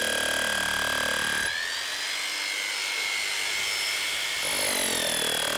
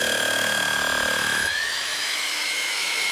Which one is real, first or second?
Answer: first